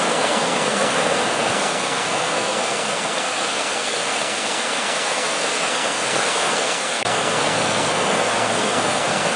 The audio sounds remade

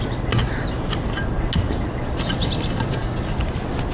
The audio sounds recorded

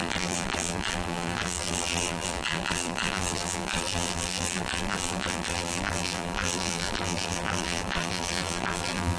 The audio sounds remade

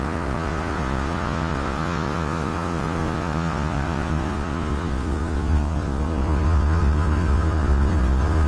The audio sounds remade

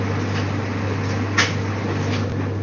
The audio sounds recorded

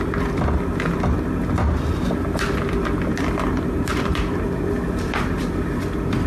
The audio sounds recorded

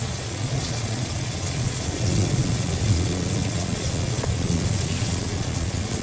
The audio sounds remade